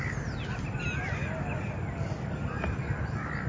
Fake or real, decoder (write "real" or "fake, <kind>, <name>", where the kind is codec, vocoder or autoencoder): real